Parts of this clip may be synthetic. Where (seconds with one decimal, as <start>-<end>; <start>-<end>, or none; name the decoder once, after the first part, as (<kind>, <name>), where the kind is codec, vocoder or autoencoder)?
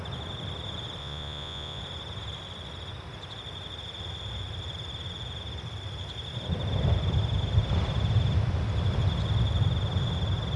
1.0-1.8 (vocoder, Vocos)